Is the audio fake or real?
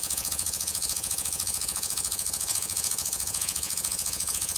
fake